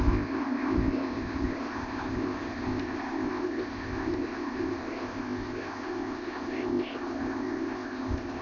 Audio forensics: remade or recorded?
remade